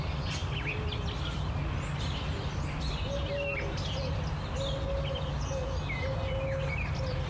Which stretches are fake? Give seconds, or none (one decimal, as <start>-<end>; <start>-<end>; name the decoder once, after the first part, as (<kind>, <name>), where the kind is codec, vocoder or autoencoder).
none